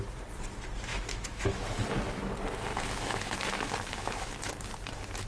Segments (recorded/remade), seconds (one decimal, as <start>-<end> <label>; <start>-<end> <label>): 0.0-0.9 recorded; 0.9-1.8 remade; 1.8-2.7 recorded; 2.7-4.4 remade; 4.4-5.3 recorded